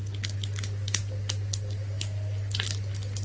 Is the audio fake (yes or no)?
no